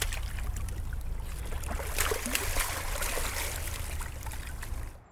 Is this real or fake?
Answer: real